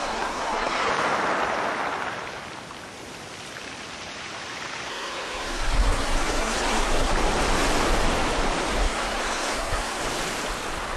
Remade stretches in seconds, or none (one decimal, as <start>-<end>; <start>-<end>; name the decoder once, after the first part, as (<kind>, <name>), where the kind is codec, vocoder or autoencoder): 0.0-0.9 (codec, SNAC); 4.9-7.1; 8.7-10.0